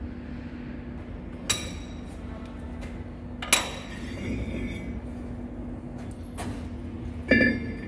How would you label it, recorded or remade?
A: recorded